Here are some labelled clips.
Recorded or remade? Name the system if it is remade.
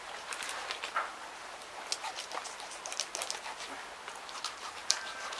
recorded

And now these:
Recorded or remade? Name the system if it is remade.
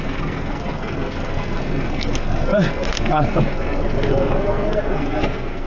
remade, codec, SNAC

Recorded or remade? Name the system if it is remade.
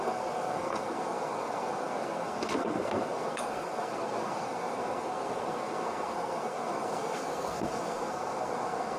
remade, codec, SNAC